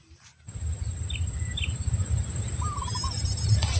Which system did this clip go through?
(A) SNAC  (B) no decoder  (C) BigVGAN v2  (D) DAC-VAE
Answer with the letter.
B